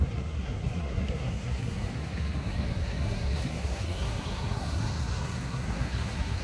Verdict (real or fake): fake